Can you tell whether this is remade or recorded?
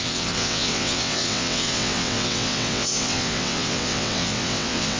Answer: remade